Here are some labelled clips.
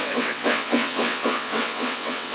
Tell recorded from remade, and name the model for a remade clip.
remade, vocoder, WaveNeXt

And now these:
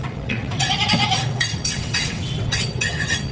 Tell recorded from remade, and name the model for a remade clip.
remade, vocoder, WaveNeXt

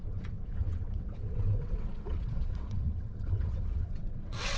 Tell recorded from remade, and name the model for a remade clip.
remade, vocoder, WaveNeXt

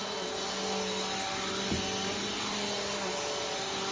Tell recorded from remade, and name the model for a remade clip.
recorded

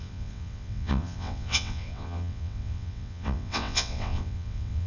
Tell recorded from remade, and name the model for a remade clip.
remade, vocoder, WaveNeXt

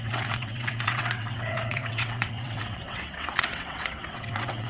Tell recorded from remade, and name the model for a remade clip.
remade, vocoder, WaveNeXt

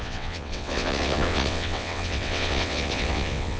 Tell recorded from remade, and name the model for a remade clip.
remade, vocoder, WaveNeXt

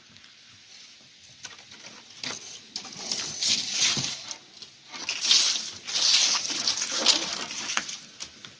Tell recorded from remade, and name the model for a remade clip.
recorded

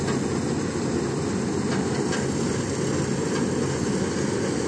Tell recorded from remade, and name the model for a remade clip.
recorded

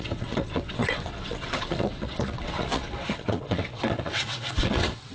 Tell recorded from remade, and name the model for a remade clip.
remade, vocoder, WaveNeXt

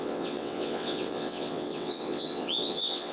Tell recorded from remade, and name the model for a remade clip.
remade, vocoder, WaveNeXt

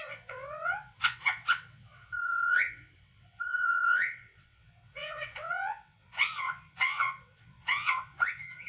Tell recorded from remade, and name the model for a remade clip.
remade, vocoder, WaveNeXt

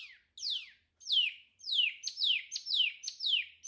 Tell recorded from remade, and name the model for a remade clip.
recorded